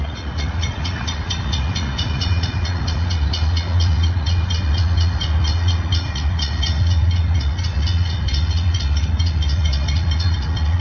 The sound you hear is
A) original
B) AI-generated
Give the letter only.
B